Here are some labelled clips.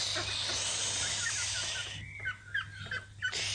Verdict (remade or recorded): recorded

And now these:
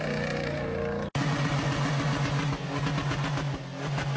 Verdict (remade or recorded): recorded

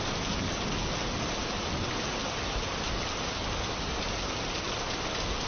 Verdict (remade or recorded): recorded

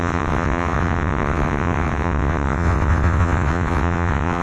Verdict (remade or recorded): remade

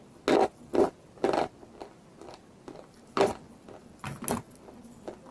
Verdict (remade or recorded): recorded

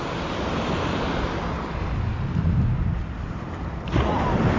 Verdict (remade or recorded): recorded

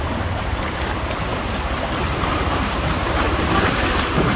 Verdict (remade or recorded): remade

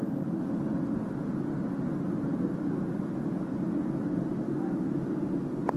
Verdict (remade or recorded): recorded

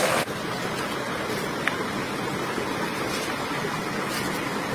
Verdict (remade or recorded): recorded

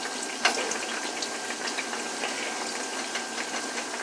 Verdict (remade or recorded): recorded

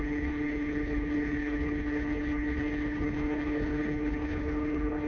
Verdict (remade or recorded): remade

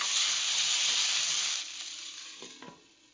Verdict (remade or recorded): recorded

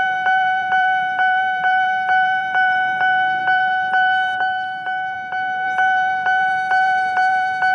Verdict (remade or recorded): remade